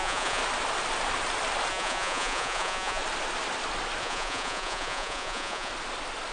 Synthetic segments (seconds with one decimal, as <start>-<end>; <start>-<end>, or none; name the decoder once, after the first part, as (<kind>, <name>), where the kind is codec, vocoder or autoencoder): 0.0-0.4 (vocoder, Vocos); 1.7-3.0; 4.0-5.7